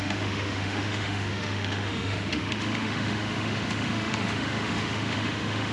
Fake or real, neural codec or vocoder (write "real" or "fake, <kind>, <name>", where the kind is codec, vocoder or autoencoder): fake, autoencoder, DAC-VAE